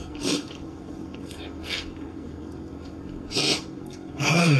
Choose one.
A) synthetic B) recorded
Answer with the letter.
A